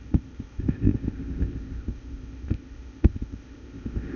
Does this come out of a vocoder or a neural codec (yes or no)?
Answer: yes